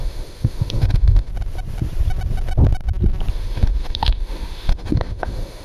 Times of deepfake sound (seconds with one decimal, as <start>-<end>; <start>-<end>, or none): 0.0-1.3; 3.3-5.6